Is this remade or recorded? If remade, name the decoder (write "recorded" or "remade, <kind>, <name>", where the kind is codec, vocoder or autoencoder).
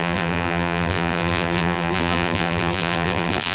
remade, vocoder, BigVGAN v2